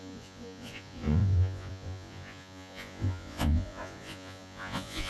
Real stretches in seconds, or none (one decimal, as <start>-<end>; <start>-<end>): none